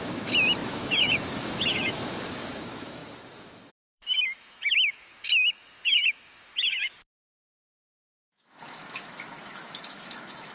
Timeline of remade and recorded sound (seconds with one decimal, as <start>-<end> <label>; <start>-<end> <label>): 0.0-10.5 remade